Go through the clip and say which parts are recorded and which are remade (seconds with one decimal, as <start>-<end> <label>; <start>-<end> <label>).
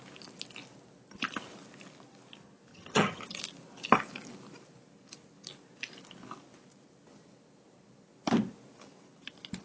0.0-2.7 recorded; 2.7-3.4 remade; 3.4-9.6 recorded